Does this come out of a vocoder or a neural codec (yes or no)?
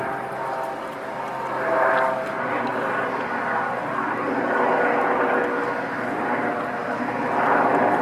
no